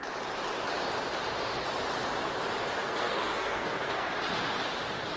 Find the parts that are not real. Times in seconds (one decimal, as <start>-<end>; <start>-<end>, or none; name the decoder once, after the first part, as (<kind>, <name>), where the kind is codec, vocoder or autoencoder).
2.8-4.1 (codec, SNAC)